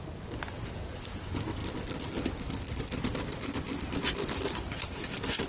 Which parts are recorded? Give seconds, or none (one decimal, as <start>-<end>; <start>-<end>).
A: 0.0-5.5